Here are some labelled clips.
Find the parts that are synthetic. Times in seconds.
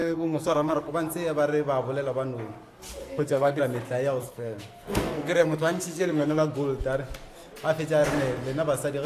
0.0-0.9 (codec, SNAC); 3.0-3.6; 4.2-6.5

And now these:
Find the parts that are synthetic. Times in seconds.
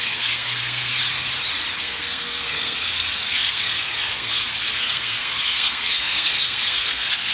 0.0-0.9 (codec, SNAC); 1.8-7.3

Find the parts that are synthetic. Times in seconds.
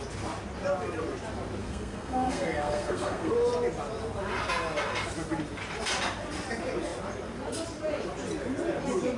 1.6-3.3 (codec, SNAC)